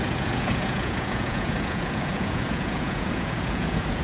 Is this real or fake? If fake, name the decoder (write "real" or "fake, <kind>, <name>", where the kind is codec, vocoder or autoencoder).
fake, vocoder, Vocos